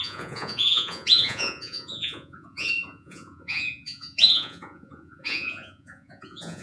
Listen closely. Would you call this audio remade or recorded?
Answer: remade